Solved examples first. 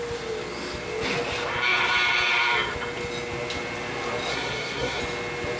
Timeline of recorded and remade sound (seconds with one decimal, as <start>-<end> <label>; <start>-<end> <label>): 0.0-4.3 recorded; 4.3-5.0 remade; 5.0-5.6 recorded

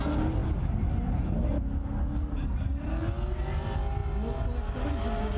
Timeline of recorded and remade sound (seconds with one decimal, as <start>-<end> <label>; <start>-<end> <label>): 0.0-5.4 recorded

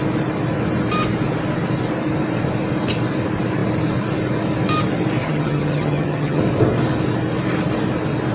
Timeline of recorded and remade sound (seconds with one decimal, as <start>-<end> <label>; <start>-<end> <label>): 0.0-5.2 recorded; 5.2-6.4 remade; 6.4-8.3 recorded

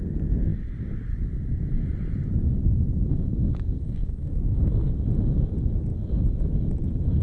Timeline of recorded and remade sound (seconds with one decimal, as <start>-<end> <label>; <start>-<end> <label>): 0.0-3.8 recorded; 3.8-4.9 remade; 4.9-7.2 recorded

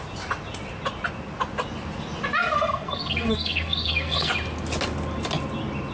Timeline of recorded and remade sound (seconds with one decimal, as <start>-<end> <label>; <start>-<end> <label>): 0.0-2.4 recorded; 2.4-4.3 remade; 4.3-5.9 recorded

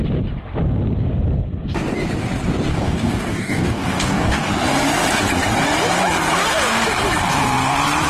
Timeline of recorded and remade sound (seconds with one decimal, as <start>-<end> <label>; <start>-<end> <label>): 0.0-2.7 recorded; 2.7-4.5 remade; 4.5-8.1 recorded